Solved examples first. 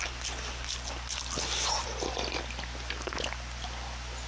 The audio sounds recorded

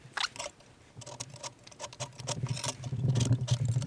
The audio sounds recorded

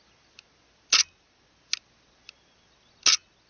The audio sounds recorded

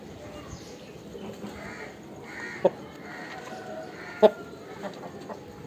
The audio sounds recorded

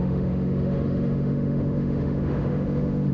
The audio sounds remade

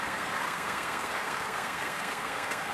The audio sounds remade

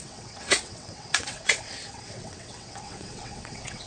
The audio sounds remade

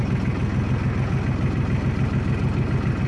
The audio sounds recorded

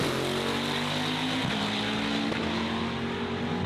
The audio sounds recorded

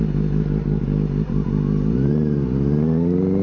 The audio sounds recorded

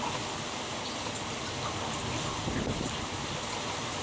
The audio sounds remade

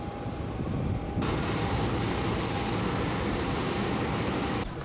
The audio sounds recorded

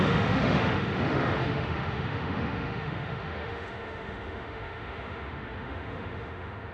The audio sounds remade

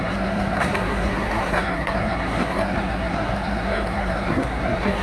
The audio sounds remade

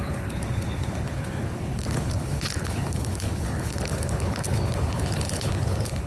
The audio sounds remade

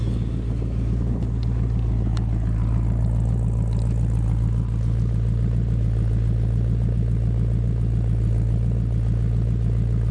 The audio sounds recorded